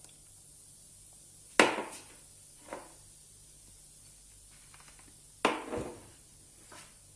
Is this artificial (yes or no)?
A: no